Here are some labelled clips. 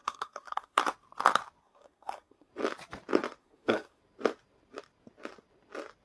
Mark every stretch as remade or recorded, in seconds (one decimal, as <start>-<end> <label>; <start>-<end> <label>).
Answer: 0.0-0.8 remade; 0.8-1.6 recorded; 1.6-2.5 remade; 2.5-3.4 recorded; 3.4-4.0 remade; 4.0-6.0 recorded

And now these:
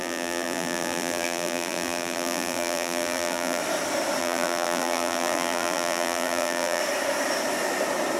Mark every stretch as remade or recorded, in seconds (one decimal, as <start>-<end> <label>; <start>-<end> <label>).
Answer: 0.0-3.6 remade; 3.6-4.2 recorded; 4.2-6.8 remade; 6.8-8.2 recorded

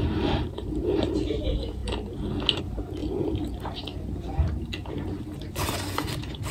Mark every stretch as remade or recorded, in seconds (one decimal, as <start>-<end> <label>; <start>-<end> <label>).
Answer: 0.0-1.8 remade; 1.8-2.6 recorded; 2.6-3.0 remade; 3.0-3.5 recorded; 3.5-6.5 remade

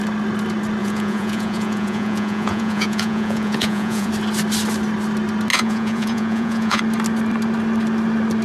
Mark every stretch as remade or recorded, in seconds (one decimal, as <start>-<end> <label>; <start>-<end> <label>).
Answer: 0.0-0.8 recorded; 0.8-4.1 remade; 4.1-5.5 recorded; 5.5-6.8 remade; 6.8-8.4 recorded

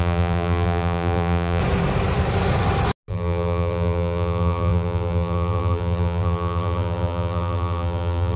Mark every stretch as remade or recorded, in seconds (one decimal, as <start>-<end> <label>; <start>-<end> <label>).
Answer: 0.0-1.6 remade; 1.6-3.1 recorded; 3.1-8.4 remade

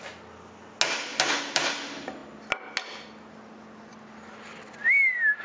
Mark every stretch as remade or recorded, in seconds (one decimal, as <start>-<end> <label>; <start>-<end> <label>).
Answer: 0.0-5.4 recorded